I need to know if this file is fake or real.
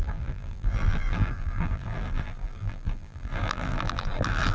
fake